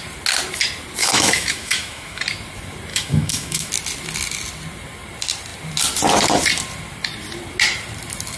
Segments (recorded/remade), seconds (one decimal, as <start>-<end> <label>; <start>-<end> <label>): 0.0-1.0 recorded; 1.0-2.2 remade; 2.2-2.9 recorded; 2.9-3.7 remade; 3.7-8.4 recorded